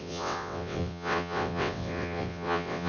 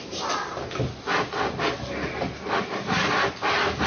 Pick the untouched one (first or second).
second